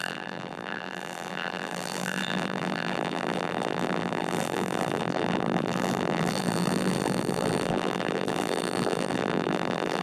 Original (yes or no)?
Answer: no